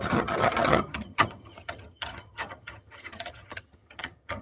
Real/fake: fake